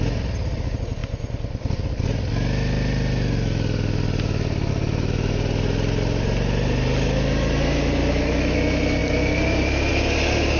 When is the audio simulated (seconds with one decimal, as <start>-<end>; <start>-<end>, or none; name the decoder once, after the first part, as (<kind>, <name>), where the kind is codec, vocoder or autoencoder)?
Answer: none